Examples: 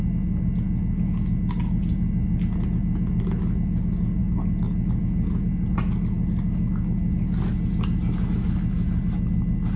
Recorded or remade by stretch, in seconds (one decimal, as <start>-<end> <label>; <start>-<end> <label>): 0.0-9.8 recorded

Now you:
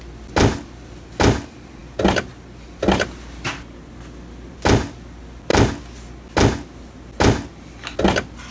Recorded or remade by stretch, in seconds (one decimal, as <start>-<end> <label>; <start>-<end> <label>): 0.0-8.5 recorded

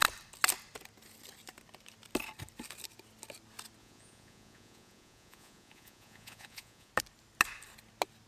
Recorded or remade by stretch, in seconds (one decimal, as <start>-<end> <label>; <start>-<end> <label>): 0.0-3.8 recorded; 3.8-6.9 remade; 6.9-8.3 recorded

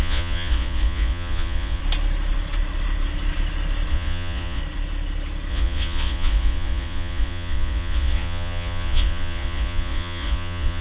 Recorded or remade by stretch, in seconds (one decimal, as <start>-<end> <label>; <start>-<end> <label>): 0.0-1.8 remade; 1.8-3.9 recorded; 3.9-4.6 remade; 4.6-5.5 recorded; 5.5-10.8 remade